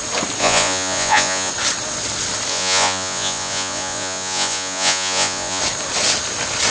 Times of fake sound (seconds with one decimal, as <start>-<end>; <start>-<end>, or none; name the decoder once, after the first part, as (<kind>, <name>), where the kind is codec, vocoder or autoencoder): 0.4-1.5 (vocoder, Vocos); 2.5-5.6